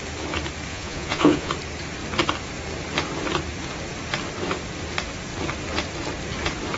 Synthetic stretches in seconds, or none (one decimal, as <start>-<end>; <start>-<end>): 0.7-1.5